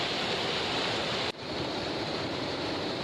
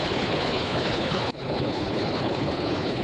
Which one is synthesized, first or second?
second